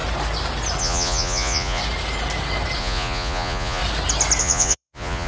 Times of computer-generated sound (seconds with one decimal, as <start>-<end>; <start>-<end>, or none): 0.8-1.8; 2.8-3.8; 4.4-5.3